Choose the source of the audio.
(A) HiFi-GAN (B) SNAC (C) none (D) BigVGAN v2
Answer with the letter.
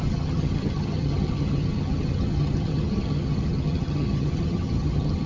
A